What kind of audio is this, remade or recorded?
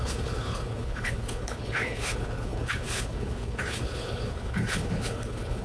remade